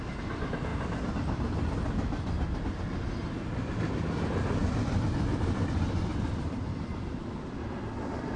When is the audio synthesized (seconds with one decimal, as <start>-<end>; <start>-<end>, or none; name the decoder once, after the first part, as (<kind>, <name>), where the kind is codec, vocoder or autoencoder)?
4.6-5.1 (vocoder, BigVGAN v2); 6.1-6.6